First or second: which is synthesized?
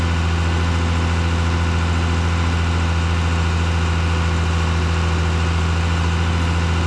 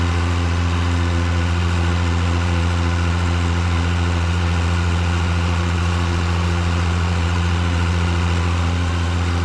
second